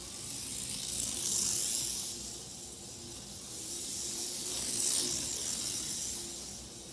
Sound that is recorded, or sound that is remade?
recorded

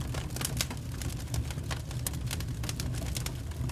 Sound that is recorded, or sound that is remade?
recorded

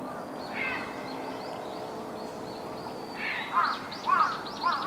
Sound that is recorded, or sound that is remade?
recorded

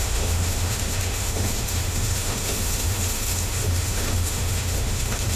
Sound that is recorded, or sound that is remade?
remade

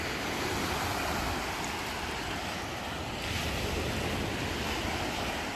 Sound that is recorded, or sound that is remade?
recorded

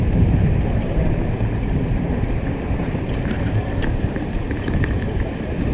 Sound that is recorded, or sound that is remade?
remade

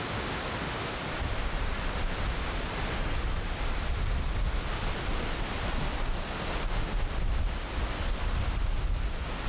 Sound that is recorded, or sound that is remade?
recorded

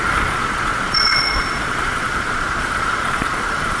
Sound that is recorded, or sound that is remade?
remade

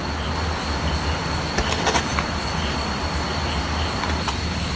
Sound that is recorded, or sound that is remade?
recorded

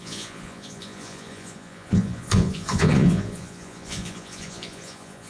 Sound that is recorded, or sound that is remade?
remade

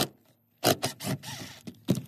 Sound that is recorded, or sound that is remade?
recorded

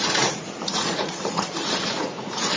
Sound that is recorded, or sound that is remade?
remade